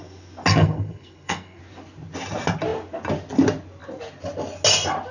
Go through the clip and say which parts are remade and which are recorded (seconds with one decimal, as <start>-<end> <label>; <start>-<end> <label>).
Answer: 0.0-0.5 recorded; 0.5-1.6 remade; 1.6-5.1 recorded